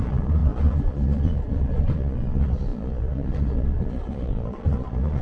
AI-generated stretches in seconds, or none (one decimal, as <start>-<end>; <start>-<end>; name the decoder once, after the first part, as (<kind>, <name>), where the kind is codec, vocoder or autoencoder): 0.0-5.2 (vocoder, Vocos)